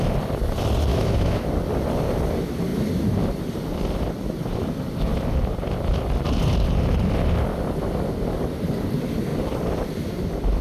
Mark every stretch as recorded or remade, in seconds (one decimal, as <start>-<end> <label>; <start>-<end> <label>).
0.0-0.9 recorded; 0.9-1.5 remade; 1.5-10.6 recorded